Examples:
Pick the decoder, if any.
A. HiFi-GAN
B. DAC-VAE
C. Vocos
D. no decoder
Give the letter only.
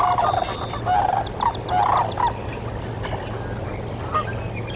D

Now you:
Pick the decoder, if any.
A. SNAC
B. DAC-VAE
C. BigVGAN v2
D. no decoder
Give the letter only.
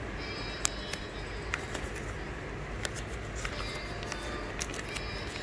D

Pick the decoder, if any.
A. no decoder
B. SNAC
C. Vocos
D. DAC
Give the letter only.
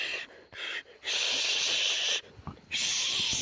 A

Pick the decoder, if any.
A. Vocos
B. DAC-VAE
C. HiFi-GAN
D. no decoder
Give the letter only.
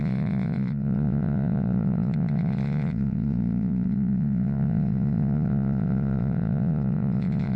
A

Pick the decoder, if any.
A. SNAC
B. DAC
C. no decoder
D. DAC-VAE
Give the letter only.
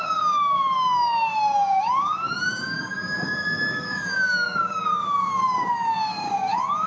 B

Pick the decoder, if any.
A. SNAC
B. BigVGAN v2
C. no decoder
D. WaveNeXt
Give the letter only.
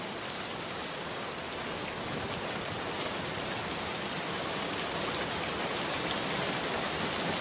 C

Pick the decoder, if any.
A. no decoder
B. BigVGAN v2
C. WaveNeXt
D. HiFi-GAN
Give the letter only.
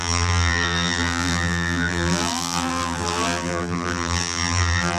B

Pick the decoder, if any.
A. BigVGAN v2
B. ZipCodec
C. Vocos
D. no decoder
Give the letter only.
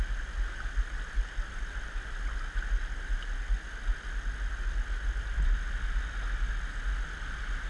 D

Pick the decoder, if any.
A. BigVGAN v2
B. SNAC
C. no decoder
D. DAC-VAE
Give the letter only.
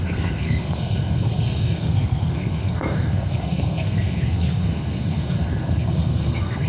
B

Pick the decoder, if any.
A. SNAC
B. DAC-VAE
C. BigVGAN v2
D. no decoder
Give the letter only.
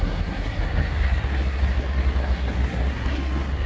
A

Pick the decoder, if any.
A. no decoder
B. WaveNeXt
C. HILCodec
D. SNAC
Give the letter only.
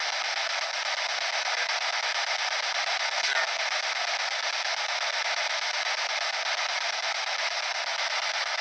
A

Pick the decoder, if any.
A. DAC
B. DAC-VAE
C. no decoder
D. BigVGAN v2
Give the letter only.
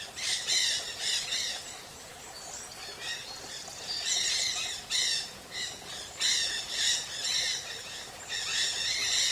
C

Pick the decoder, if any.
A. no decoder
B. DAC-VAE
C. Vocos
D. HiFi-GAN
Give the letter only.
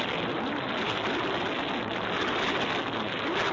A